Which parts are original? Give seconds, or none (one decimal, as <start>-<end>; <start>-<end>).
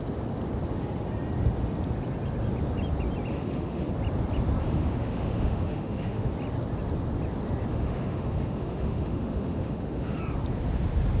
0.0-3.3; 3.9-4.6; 6.3-7.7; 10.2-11.2